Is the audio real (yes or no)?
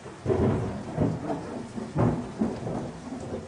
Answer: no